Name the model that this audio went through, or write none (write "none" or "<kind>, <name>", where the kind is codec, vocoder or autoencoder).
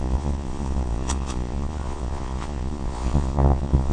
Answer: vocoder, Vocos